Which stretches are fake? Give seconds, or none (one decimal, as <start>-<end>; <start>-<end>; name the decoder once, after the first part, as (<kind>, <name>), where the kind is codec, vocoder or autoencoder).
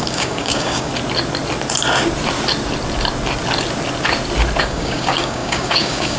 0.0-0.9 (codec, DAC); 4.6-6.2